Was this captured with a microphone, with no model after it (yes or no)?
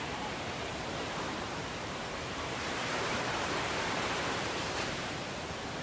no